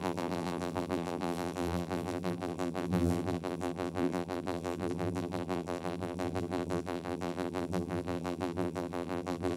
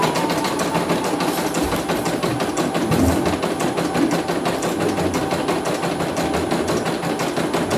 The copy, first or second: first